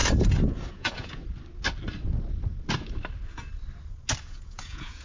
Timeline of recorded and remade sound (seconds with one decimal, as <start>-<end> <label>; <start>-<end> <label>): 0.0-0.7 recorded; 0.7-1.2 remade; 1.2-4.2 recorded; 4.2-5.0 remade